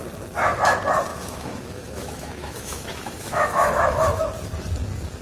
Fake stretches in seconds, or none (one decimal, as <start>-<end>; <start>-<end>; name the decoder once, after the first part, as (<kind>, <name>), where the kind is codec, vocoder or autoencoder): 1.1-4.2 (autoencoder, DAC-VAE)